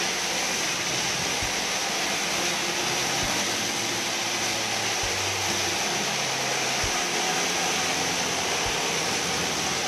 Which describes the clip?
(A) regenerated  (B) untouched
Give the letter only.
B